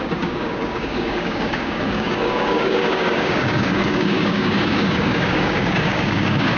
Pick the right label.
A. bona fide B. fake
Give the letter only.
B